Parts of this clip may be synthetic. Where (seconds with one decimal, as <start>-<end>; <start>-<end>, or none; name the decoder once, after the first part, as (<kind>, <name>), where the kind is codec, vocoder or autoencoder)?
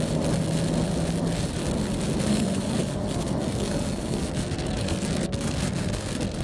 2.3-6.4 (codec, SNAC)